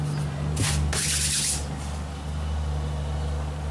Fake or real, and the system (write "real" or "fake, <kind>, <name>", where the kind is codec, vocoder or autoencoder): real